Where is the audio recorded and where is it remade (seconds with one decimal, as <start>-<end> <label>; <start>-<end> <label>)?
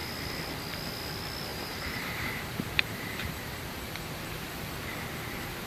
0.0-1.5 recorded; 1.5-4.5 remade; 4.5-5.7 recorded